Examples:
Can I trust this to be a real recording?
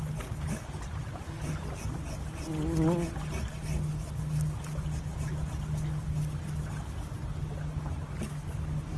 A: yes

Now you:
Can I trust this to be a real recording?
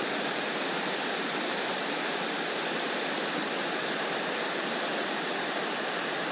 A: no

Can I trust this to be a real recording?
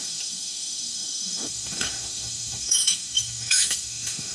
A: no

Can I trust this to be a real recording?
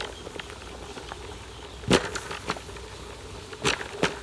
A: yes